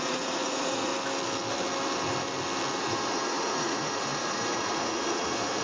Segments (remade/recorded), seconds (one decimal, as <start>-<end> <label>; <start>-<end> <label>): 0.0-0.9 remade; 0.9-2.8 recorded; 2.8-5.6 remade